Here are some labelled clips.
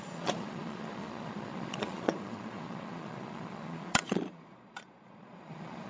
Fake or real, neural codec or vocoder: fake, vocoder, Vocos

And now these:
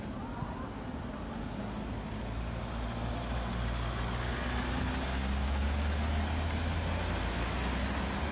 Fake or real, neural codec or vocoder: real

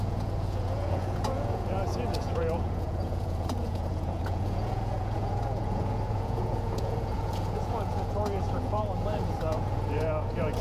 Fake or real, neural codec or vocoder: fake, vocoder, Vocos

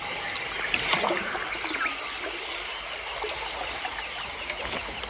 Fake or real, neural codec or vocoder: real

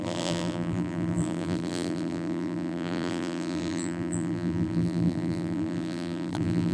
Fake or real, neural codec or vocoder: fake, vocoder, BigVGAN v2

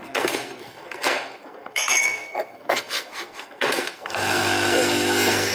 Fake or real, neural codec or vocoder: fake, codec, SNAC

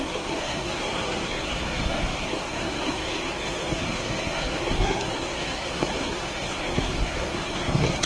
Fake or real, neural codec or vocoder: fake, codec, SNAC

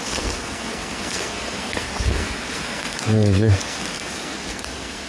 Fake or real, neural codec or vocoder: fake, codec, SNAC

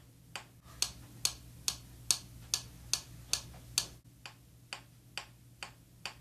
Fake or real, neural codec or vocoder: real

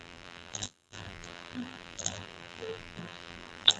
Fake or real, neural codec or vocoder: fake, vocoder, BigVGAN v2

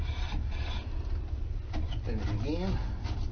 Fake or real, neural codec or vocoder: real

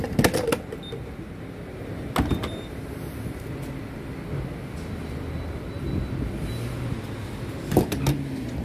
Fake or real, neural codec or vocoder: real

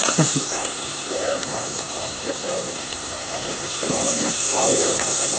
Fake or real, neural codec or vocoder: fake, codec, SNAC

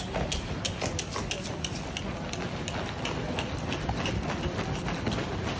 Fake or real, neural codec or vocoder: real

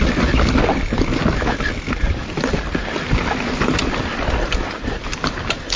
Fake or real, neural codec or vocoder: real